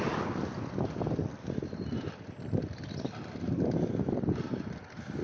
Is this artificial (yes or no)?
no